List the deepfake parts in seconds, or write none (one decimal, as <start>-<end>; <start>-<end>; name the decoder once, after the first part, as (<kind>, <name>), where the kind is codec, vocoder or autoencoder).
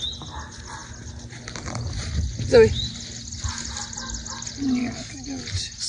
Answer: 4.8-5.4 (codec, DAC)